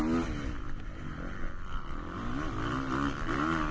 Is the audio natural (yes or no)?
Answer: yes